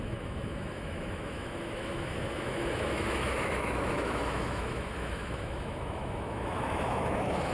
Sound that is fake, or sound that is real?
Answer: fake